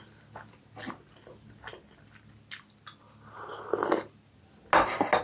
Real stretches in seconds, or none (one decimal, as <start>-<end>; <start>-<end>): 0.0-5.2